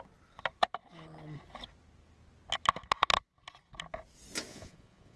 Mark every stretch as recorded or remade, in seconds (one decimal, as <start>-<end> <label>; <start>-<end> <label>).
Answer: 0.0-4.5 recorded; 4.5-5.2 remade